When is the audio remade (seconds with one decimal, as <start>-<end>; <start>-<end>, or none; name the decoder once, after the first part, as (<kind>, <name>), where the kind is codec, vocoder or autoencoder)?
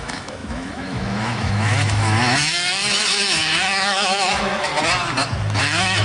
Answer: 0.0-4.7 (autoencoder, DAC-VAE); 5.6-6.0